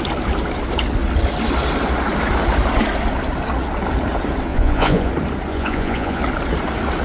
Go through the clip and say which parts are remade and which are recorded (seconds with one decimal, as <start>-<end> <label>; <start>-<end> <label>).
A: 0.0-4.5 recorded; 4.5-5.1 remade; 5.1-5.5 recorded; 5.5-6.2 remade; 6.2-7.0 recorded